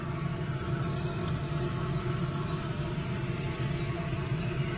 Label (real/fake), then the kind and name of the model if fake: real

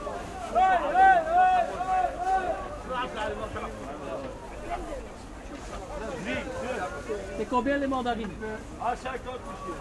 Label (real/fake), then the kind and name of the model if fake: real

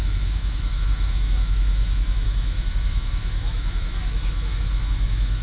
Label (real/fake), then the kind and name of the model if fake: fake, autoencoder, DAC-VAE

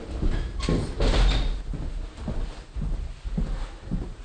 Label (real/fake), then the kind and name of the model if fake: real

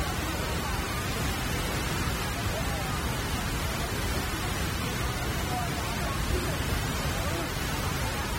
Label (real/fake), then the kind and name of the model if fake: real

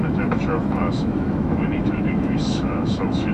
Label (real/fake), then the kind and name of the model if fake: fake, autoencoder, DAC-VAE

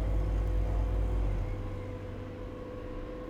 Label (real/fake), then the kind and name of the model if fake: real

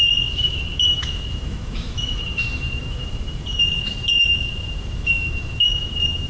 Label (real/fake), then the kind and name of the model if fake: fake, autoencoder, DAC-VAE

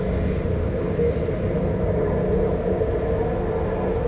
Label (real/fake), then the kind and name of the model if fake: real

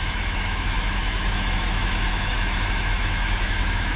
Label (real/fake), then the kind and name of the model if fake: fake, autoencoder, DAC-VAE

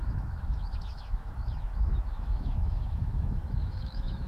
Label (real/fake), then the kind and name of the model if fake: fake, autoencoder, DAC-VAE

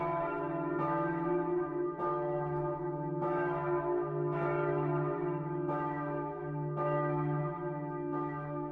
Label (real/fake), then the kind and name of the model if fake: fake, autoencoder, DAC-VAE